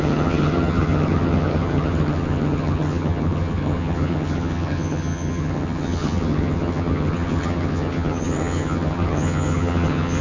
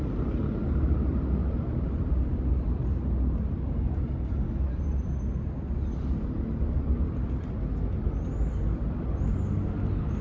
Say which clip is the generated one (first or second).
first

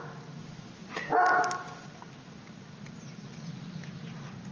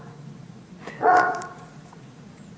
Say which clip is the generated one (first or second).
second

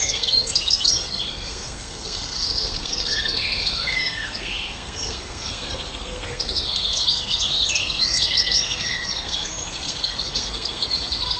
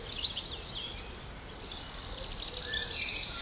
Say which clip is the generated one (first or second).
first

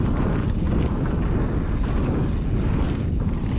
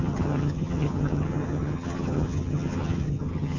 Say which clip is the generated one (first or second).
second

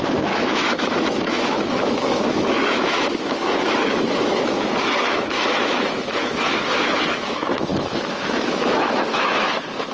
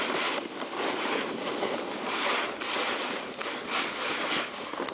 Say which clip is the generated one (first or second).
first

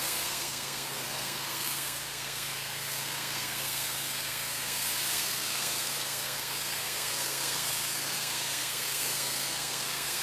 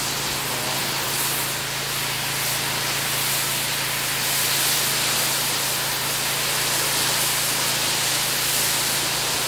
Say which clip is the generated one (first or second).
first